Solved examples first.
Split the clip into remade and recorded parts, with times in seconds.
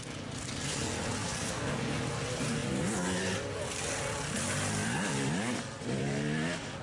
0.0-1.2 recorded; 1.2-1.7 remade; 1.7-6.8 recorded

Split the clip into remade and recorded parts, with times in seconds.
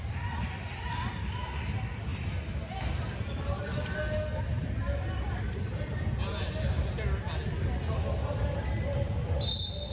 0.0-9.9 recorded